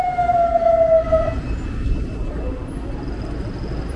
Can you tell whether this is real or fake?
real